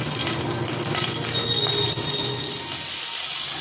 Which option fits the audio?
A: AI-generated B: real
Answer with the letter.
B